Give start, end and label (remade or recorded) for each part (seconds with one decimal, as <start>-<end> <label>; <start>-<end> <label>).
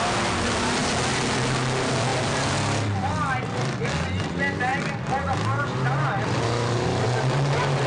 0.0-7.9 recorded